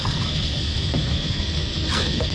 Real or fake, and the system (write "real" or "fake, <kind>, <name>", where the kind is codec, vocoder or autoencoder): fake, codec, SNAC